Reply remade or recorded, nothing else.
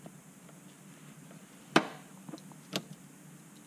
recorded